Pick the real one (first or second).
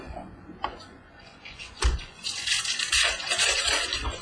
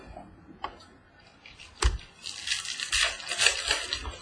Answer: second